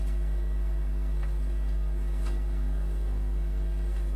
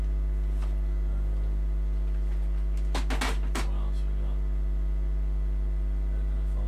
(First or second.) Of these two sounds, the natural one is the second